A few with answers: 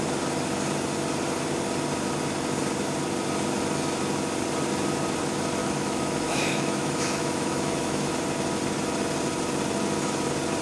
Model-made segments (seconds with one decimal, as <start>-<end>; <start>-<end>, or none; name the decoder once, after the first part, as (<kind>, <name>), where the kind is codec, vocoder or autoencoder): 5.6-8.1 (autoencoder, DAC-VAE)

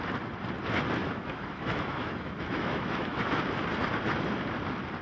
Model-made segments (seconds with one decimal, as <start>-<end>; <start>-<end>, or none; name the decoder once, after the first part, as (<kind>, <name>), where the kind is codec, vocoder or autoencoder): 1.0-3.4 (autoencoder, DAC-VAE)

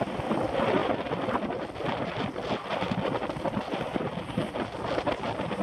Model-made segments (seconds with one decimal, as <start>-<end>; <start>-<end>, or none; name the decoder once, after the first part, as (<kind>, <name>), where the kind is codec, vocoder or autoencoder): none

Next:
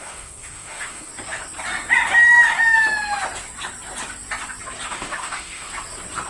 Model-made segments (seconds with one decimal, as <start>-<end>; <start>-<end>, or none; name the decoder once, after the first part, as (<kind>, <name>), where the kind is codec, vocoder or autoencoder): 0.0-1.1 (autoencoder, DAC-VAE); 4.9-5.7